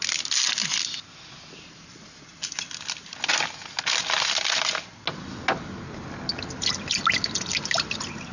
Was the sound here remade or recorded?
recorded